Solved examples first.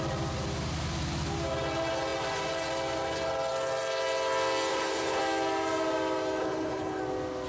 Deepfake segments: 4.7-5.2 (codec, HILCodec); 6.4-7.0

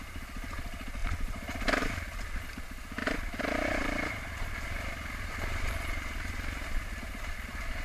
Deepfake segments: 1.0-1.8 (vocoder, BigVGAN v2); 3.0-4.7

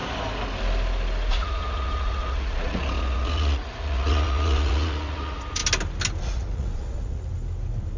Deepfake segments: 1.3-5.6 (vocoder, Vocos); 6.2-7.3

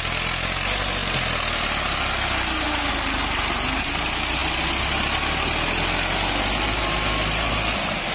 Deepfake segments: none

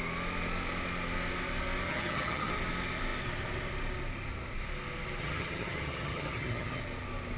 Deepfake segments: 1.9-2.5 (vocoder, HiFi-GAN); 5.2-6.8

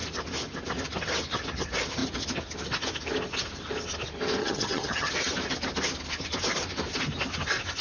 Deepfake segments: 4.4-5.1 (vocoder, HiFi-GAN)

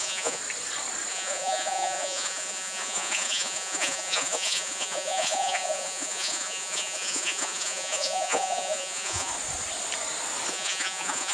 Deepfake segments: 0.0-0.4 (vocoder, Vocos); 1.1-9.3; 10.5-11.3